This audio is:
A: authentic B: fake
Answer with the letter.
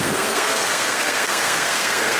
B